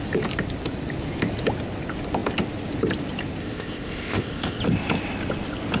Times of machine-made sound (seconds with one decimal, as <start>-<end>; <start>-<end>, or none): 3.4-4.6